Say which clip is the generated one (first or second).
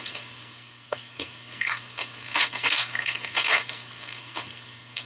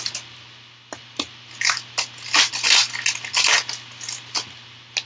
first